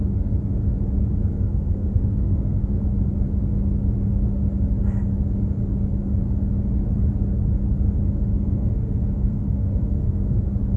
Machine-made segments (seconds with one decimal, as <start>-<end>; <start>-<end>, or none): 1.3-2.8; 8.3-10.4